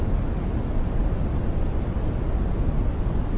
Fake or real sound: fake